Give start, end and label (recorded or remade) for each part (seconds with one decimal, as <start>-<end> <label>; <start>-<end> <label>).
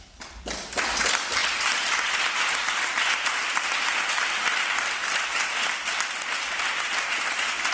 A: 0.0-7.7 recorded